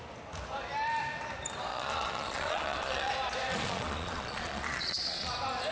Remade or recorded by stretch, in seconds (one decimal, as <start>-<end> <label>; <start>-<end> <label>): 0.0-1.7 recorded; 1.7-3.1 remade; 3.1-3.5 recorded; 3.5-5.3 remade; 5.3-5.7 recorded